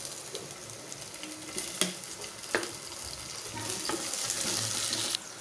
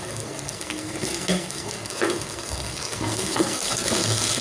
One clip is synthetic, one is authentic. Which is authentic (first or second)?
first